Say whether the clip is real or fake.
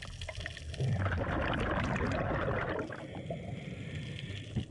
real